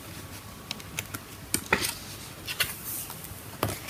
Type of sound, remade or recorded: recorded